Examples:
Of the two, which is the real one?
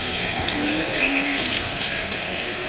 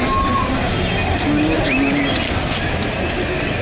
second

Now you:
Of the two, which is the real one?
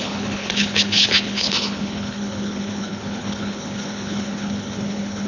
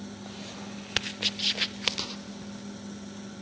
second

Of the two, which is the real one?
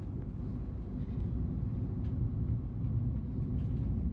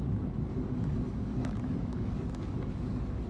first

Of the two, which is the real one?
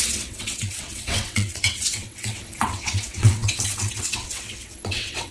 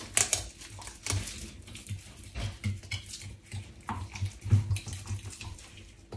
second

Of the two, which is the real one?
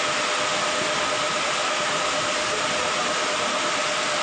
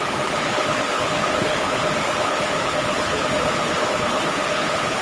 first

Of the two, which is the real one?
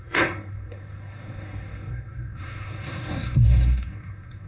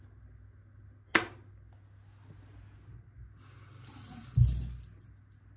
second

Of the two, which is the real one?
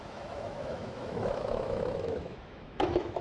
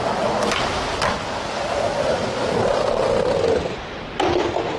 second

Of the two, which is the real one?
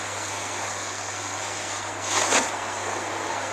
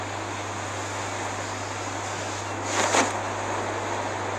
second